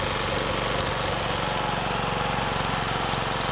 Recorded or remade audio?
recorded